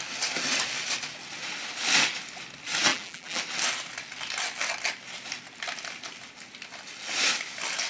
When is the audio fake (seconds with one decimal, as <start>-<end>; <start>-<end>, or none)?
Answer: 2.9-3.4